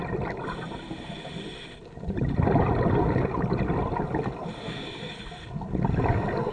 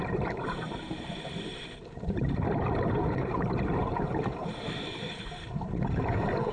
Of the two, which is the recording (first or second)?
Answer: first